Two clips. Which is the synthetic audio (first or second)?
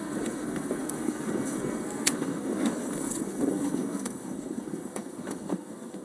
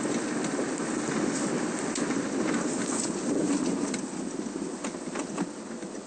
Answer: first